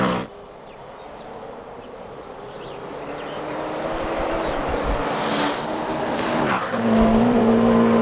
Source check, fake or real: fake